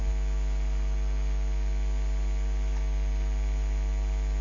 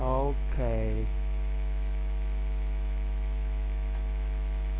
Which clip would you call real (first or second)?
first